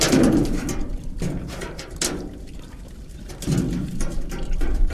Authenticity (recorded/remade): recorded